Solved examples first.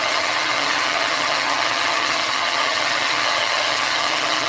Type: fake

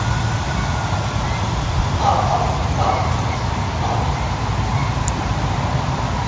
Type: real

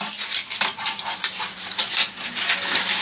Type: real